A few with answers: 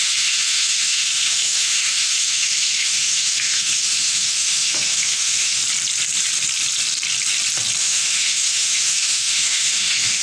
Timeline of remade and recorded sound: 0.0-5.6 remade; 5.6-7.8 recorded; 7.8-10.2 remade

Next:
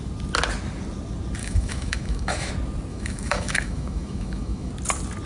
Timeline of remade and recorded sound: 0.0-1.4 recorded; 1.4-2.5 remade; 2.5-2.9 recorded; 2.9-4.7 remade; 4.7-5.3 recorded

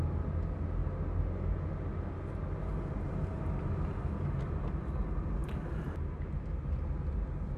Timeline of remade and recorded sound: 0.0-7.6 recorded

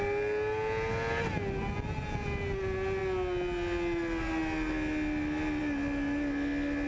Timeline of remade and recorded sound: 0.0-6.9 recorded

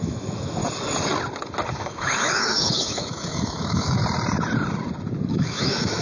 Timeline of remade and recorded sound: 0.0-0.6 remade; 0.6-1.7 recorded; 1.7-4.0 remade; 4.0-5.3 recorded; 5.3-6.0 remade

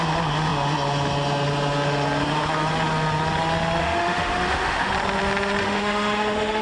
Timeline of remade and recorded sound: 0.0-3.8 recorded; 3.8-4.9 remade; 4.9-5.6 recorded; 5.6-6.6 remade

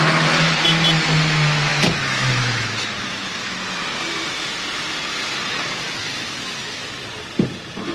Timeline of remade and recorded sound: 0.0-1.7 recorded; 1.7-3.6 remade; 3.6-6.0 recorded; 6.0-6.8 remade; 6.8-7.9 recorded

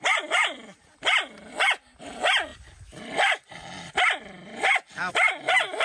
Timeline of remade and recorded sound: 0.0-5.8 recorded